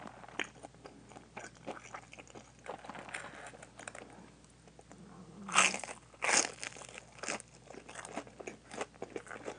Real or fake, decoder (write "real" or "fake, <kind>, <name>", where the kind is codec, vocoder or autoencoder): real